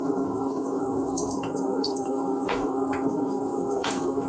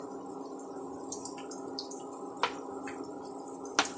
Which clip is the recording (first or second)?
second